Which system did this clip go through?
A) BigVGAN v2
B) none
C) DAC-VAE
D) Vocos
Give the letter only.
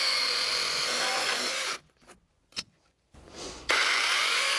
D